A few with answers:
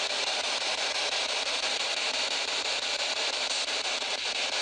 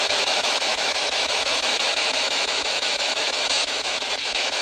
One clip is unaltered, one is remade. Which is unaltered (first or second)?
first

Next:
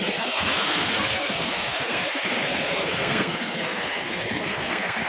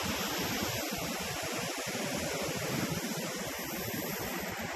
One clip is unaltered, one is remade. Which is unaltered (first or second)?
second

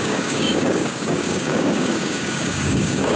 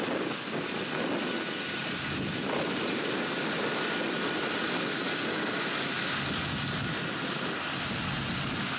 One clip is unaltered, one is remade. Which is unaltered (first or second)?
second